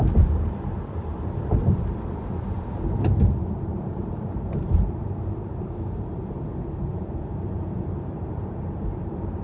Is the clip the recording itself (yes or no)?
no